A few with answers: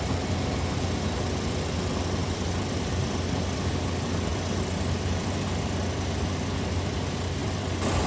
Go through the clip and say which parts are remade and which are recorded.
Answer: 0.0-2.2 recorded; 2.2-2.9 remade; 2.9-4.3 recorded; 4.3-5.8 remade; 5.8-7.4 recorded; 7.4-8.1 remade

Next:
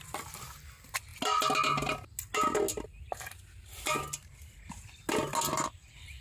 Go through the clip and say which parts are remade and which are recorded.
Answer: 0.0-6.2 recorded

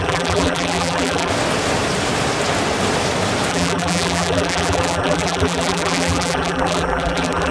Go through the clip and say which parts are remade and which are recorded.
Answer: 0.0-1.3 remade; 1.3-3.5 recorded; 3.5-7.5 remade

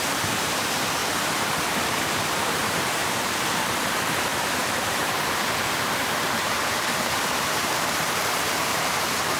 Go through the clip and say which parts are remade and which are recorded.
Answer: 0.0-1.0 remade; 1.0-1.6 recorded; 1.6-3.0 remade; 3.0-3.9 recorded; 3.9-9.4 remade

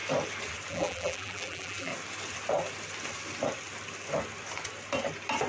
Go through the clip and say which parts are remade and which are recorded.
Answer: 0.0-0.7 recorded; 0.7-1.9 remade; 1.9-5.5 recorded

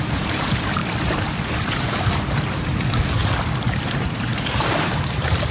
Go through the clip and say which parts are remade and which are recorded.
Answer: 0.0-0.8 remade; 0.8-1.6 recorded; 1.6-3.2 remade; 3.2-3.8 recorded; 3.8-5.5 remade

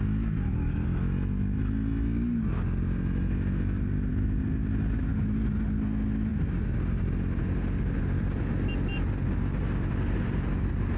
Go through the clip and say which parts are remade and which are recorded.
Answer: 0.0-11.0 recorded